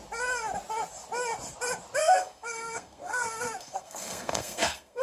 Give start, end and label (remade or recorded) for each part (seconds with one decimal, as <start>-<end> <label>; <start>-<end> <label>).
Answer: 0.0-2.0 recorded; 2.0-5.0 remade